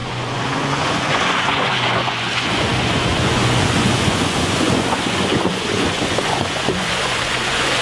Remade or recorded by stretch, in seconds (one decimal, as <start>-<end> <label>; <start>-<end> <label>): 0.0-7.8 remade